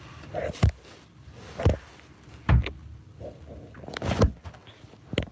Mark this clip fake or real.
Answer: real